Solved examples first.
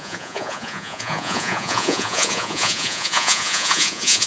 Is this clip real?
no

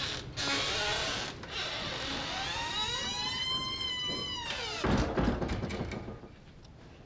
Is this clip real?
yes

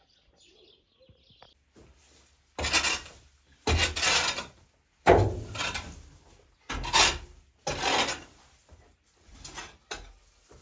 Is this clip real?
yes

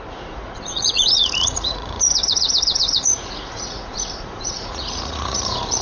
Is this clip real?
no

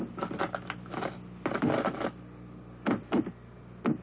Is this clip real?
yes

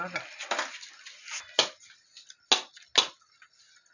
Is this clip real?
yes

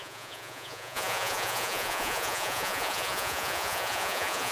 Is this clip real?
no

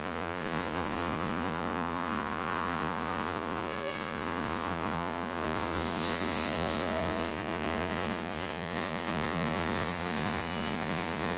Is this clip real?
no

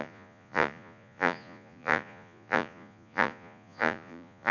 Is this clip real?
no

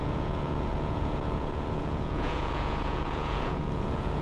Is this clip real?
no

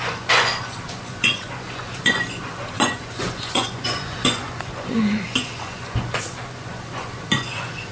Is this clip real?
no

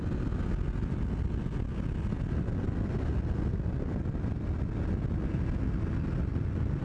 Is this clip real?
yes